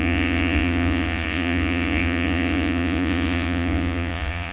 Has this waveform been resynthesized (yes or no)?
yes